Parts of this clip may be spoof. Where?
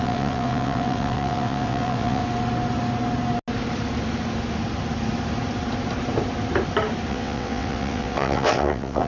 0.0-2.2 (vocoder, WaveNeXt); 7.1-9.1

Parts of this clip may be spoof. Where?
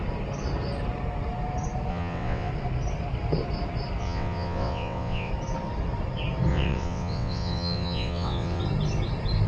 1.9-2.5 (vocoder, WaveNeXt); 4.0-5.3; 6.5-8.6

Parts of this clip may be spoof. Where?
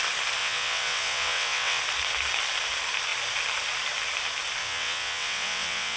0.4-1.8 (vocoder, WaveNeXt); 4.6-6.0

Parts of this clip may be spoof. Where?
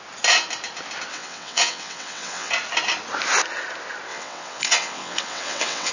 1.1-2.5 (vocoder, WaveNeXt); 4.1-5.9